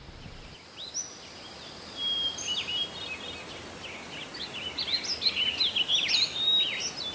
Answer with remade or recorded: recorded